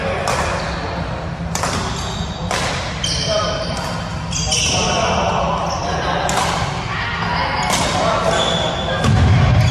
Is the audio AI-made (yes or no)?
no